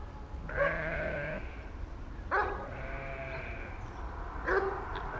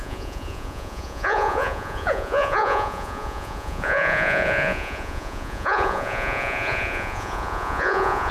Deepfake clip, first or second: second